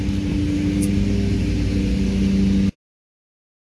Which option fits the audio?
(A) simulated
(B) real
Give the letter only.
B